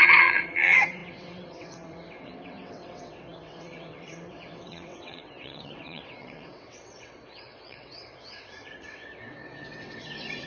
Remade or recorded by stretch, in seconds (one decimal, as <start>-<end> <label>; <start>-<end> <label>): 0.0-10.5 remade